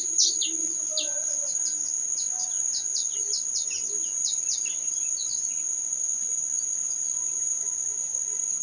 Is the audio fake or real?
real